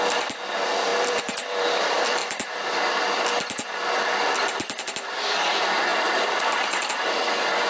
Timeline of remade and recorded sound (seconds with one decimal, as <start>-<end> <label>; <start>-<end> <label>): 0.0-2.2 remade; 2.2-4.3 recorded; 4.3-7.7 remade